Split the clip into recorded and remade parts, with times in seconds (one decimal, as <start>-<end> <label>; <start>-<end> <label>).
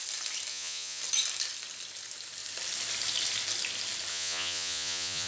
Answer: 0.0-0.5 recorded; 0.5-1.0 remade; 1.0-4.1 recorded; 4.1-5.3 remade